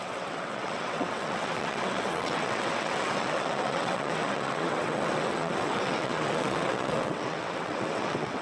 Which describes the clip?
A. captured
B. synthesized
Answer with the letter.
B